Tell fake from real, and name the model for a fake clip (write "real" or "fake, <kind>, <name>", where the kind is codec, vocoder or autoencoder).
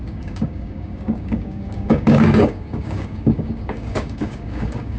fake, codec, DAC